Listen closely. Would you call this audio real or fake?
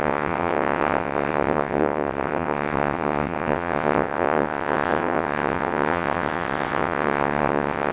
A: fake